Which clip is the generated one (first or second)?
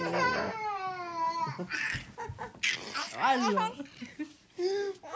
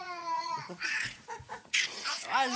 second